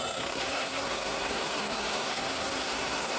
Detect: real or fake fake